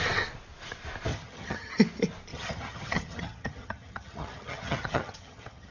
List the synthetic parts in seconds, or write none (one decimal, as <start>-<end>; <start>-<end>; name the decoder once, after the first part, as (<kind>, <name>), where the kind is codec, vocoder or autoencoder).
1.1-1.7 (vocoder, HiFi-GAN); 2.3-5.7